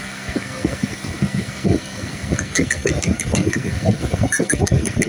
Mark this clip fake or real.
fake